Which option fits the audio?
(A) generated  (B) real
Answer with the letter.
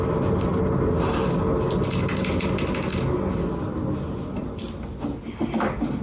B